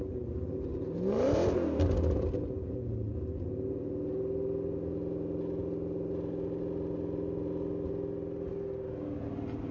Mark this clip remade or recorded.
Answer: recorded